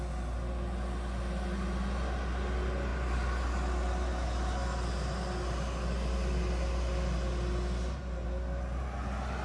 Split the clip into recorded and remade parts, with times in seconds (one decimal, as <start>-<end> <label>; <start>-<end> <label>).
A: 0.0-9.4 recorded